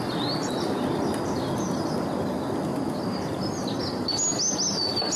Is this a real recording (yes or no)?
yes